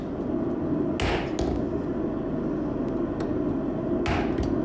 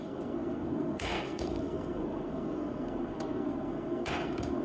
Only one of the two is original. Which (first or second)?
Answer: first